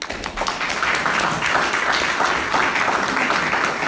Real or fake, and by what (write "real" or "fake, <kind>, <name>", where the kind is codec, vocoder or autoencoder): real